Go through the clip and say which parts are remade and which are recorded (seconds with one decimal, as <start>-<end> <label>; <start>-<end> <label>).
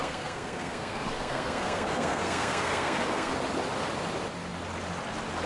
0.0-3.3 remade; 3.3-5.5 recorded